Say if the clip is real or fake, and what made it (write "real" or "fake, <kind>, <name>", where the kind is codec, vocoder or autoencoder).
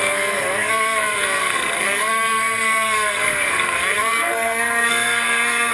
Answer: fake, codec, SNAC